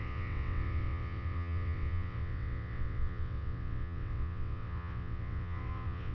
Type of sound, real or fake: fake